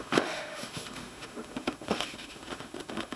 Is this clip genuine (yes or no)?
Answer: no